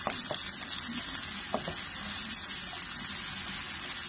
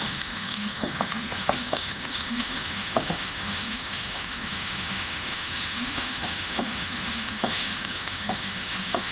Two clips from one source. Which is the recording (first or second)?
first